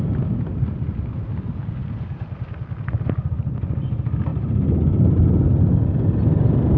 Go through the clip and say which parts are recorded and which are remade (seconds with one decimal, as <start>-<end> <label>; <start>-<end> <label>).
0.0-1.8 recorded; 1.8-2.8 remade; 2.8-4.3 recorded; 4.3-5.9 remade; 5.9-6.8 recorded